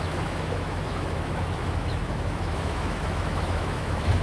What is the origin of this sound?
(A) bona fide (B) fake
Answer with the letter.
B